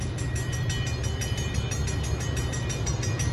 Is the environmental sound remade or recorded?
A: recorded